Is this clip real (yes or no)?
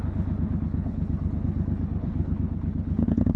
no